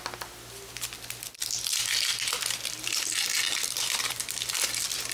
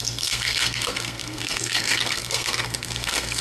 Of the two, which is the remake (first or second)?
second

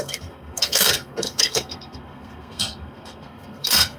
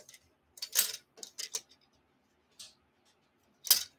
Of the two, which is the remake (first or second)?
first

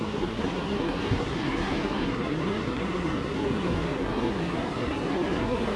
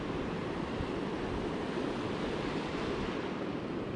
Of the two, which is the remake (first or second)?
first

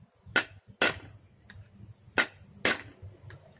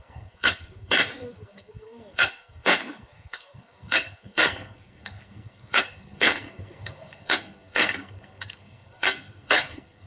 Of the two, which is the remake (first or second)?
second